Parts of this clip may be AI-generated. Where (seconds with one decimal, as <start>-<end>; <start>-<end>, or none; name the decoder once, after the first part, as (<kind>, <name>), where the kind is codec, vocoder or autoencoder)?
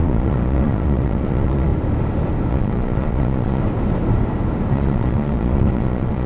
0.0-1.7 (vocoder, Vocos); 2.5-3.6; 4.7-6.3